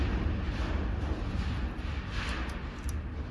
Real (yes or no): yes